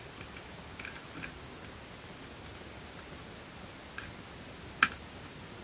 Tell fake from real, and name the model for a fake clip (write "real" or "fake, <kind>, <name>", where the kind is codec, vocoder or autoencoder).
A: real